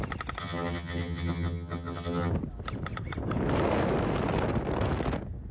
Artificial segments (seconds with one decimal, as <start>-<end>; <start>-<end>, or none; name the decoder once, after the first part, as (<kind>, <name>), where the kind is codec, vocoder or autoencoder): 0.4-2.3 (vocoder, HiFi-GAN)

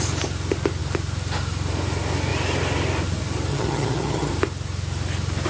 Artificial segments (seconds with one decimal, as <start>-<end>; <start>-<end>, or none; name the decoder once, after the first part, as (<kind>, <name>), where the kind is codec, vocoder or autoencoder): 3.5-4.3 (vocoder, HiFi-GAN)

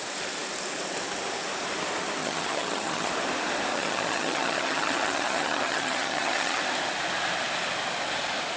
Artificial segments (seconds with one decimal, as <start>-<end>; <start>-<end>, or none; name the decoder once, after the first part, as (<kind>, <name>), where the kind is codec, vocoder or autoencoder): 2.2-3.1 (vocoder, HiFi-GAN); 3.7-6.6

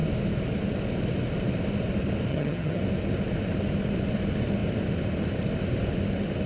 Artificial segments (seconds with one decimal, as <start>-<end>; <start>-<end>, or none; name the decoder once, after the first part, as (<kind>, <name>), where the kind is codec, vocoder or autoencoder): 2.3-2.8 (vocoder, HiFi-GAN)

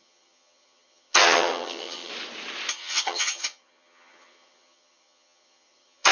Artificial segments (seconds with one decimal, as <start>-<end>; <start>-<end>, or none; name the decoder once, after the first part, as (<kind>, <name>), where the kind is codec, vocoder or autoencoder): 0.0-2.1 (vocoder, HiFi-GAN); 2.7-6.1

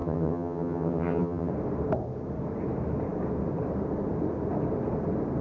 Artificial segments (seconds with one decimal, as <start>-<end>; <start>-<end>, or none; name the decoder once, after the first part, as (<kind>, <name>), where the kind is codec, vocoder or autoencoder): 0.0-1.5 (vocoder, HiFi-GAN)